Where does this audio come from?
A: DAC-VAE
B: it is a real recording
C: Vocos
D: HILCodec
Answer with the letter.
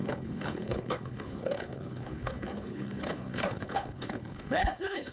D